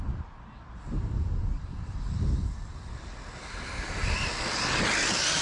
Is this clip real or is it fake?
real